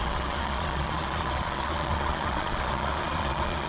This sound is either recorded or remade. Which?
remade